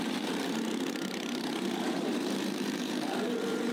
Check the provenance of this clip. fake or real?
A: fake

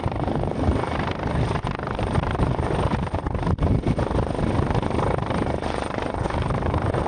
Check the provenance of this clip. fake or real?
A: real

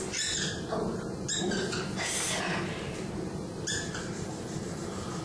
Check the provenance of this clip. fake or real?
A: real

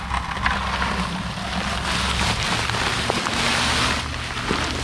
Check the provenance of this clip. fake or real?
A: real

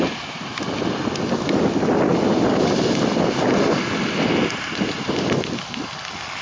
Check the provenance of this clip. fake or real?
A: real